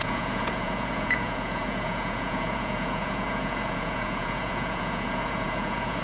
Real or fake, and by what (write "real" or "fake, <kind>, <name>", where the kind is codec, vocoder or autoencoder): fake, vocoder, Vocos